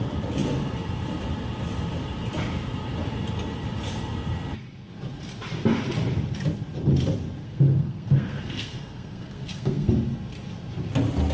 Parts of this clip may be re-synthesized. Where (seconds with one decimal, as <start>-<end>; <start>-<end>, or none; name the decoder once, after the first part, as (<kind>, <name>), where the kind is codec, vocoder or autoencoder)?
7.4-9.9 (codec, SNAC)